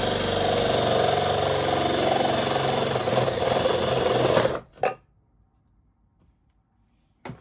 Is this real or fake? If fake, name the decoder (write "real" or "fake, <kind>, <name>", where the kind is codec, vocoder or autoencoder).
real